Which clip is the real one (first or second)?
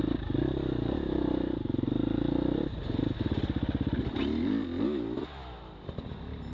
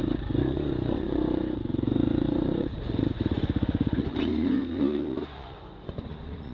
first